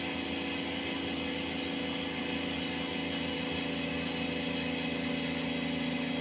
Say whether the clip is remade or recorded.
recorded